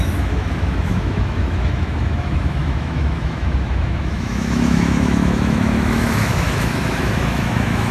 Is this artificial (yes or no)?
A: yes